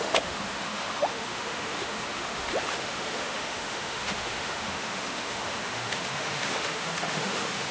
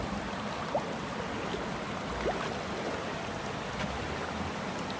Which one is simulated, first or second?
first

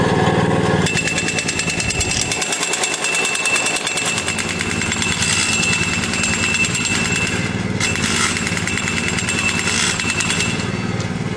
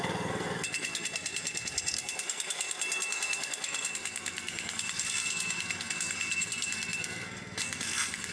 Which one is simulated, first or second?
second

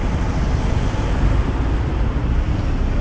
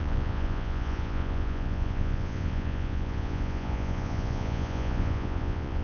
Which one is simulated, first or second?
second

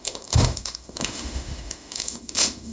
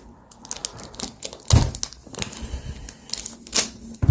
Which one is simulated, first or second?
first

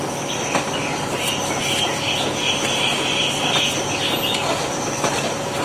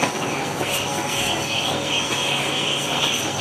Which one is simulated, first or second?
second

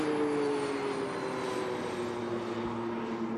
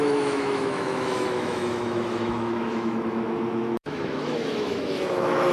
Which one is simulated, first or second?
second